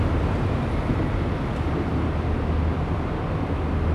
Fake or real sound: real